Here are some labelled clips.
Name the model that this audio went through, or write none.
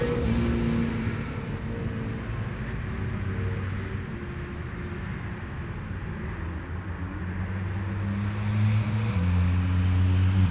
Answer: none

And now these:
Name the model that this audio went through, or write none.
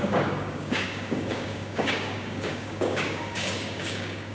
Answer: codec, DAC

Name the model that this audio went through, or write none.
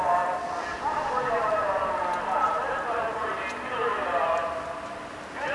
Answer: none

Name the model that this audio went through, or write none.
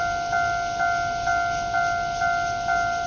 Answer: none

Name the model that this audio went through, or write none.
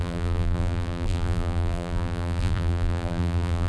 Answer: vocoder, BigVGAN v2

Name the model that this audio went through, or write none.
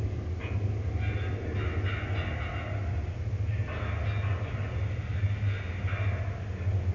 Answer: none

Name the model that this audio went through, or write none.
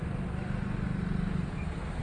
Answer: none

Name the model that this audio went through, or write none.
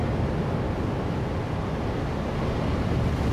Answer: none